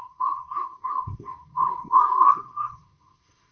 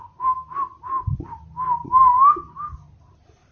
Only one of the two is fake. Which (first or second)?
first